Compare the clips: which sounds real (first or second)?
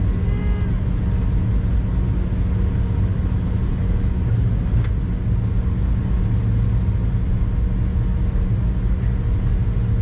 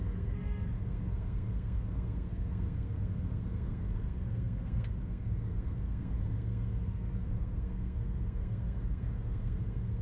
first